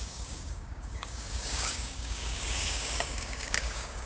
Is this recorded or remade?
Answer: remade